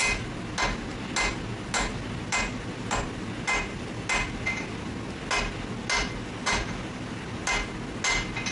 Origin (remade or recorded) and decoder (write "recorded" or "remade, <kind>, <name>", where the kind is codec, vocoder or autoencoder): recorded